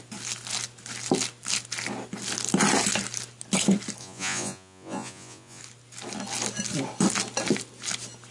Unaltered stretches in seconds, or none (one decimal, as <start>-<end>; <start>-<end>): 0.0-4.0; 5.6-8.3